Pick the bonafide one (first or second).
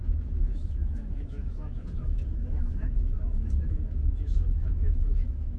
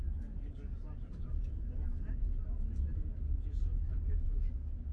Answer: second